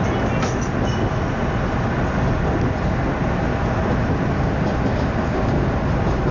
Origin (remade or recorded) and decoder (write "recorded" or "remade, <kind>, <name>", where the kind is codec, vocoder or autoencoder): recorded